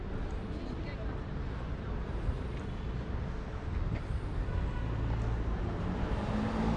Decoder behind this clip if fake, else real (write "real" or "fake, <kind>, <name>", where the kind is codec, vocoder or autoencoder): real